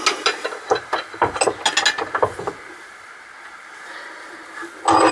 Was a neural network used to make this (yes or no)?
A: no